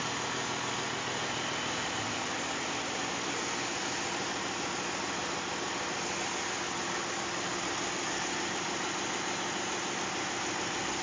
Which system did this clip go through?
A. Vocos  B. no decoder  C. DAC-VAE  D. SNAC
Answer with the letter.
B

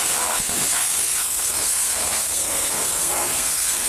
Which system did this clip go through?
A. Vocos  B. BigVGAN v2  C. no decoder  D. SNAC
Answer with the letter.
D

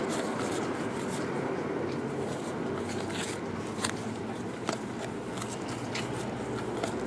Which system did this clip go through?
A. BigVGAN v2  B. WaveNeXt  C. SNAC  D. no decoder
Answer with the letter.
D